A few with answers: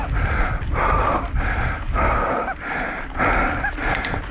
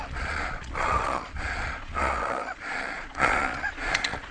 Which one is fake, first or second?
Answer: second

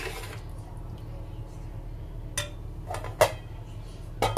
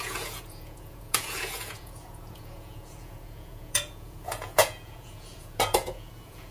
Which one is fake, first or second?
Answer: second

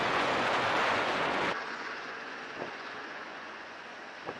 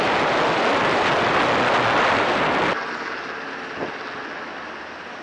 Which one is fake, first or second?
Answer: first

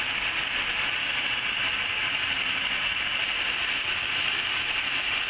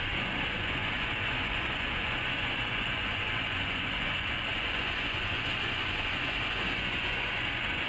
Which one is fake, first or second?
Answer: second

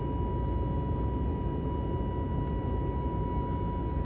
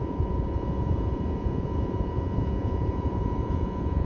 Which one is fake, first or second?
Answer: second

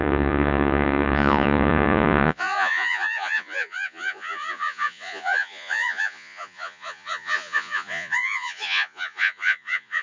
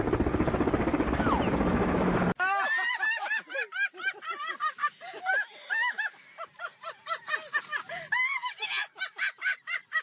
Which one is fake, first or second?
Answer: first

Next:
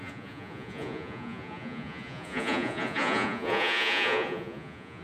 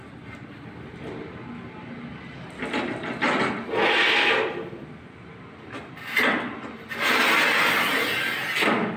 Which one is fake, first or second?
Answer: first